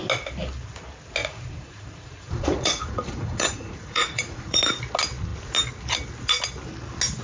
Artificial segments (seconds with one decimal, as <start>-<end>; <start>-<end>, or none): 1.2-4.6